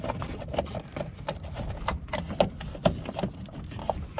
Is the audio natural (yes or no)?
yes